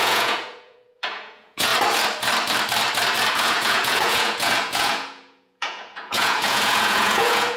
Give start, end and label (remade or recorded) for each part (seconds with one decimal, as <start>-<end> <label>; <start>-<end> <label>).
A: 0.0-1.7 remade; 1.7-3.3 recorded; 3.3-7.6 remade